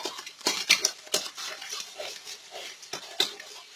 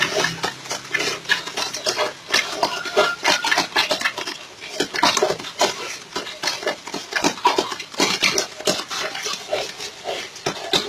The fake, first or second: first